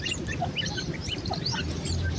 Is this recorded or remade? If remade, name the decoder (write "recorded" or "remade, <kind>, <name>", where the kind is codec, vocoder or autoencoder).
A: recorded